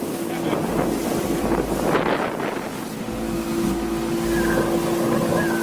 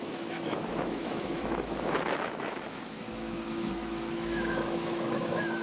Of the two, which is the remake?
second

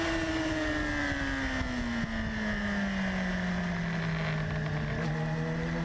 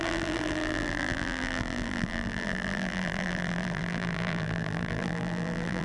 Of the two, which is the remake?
second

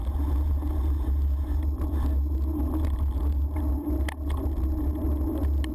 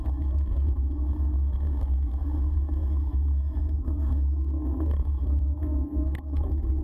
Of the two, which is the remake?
second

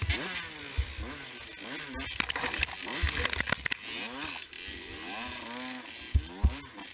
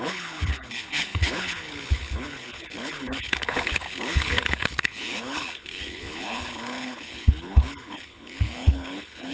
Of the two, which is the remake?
second